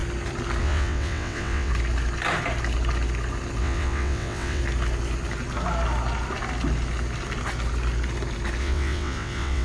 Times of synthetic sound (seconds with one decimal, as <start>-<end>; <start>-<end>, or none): 0.6-1.7; 3.6-4.6; 8.6-9.6